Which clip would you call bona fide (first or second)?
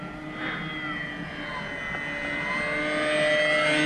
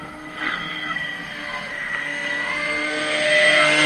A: first